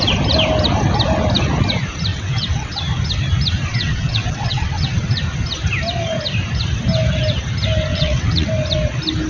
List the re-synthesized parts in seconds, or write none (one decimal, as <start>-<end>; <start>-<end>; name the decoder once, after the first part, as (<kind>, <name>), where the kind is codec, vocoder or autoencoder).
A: 2.1-2.8 (vocoder, WaveNeXt); 3.7-5.2; 7.9-8.5